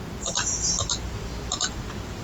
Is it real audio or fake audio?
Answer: real